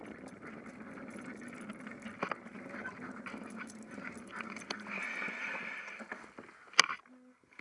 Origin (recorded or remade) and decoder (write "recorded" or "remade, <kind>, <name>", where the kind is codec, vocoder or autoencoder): recorded